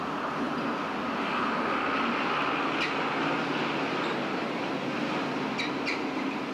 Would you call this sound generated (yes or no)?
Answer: no